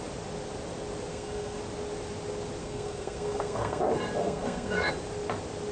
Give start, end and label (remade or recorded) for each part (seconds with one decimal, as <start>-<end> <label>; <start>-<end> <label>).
0.0-1.1 recorded; 1.1-1.6 remade; 1.6-2.6 recorded; 2.6-3.8 remade; 3.8-4.2 recorded; 4.2-4.9 remade; 4.9-5.7 recorded